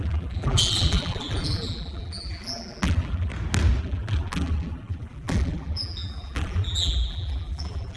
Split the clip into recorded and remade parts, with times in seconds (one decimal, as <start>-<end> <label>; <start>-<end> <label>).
0.0-3.3 remade; 3.3-3.8 recorded; 3.8-8.0 remade